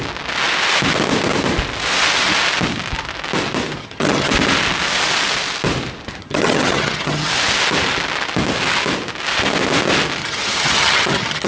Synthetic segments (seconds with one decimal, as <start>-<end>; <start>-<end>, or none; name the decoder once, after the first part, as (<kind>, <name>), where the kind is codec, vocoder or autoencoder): 3.8-4.3 (vocoder, HiFi-GAN); 6.2-7.3; 10.2-11.5

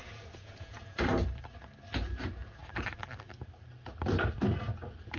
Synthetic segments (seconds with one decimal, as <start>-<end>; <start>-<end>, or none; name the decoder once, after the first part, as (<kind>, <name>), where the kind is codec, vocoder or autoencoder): 0.0-1.0 (vocoder, Vocos)